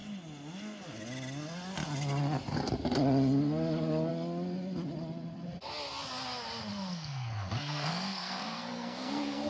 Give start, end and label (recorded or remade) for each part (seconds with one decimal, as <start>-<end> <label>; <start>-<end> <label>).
0.0-6.7 recorded; 6.7-9.5 remade